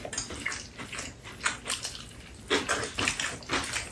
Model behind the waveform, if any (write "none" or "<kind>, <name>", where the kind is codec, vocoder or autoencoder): none